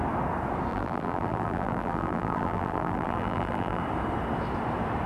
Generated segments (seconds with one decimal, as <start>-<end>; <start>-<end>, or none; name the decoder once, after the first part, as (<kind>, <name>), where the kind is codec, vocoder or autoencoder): 0.7-3.8 (vocoder, BigVGAN v2)